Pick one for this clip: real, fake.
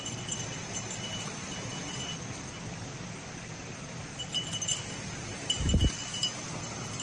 real